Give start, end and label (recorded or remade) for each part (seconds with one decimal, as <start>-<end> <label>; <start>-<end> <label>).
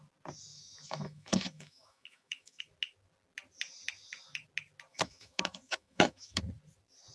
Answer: 0.0-0.5 recorded; 0.5-2.6 remade; 2.6-4.9 recorded; 4.9-6.4 remade; 6.4-7.1 recorded